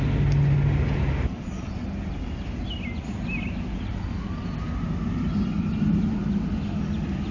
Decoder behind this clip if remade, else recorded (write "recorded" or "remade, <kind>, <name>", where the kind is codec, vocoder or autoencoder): recorded